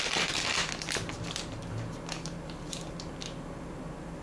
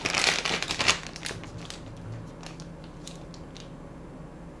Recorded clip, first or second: second